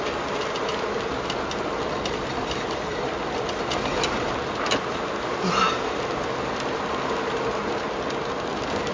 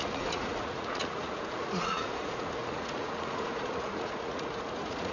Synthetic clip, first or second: second